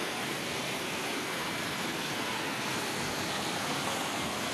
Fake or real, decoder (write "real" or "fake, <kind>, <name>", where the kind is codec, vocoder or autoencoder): fake, codec, SNAC